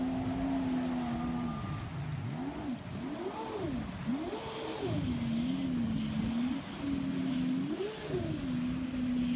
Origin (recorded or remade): recorded